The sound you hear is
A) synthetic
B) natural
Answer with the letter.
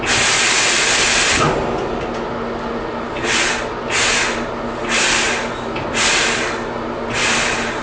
B